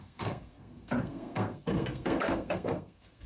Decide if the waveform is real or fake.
fake